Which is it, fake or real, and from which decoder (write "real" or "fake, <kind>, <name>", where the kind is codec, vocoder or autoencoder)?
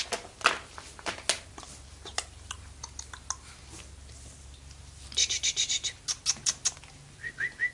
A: real